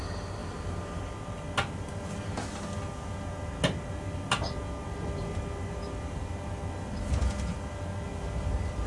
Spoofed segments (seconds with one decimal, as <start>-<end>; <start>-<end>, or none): 0.4-1.0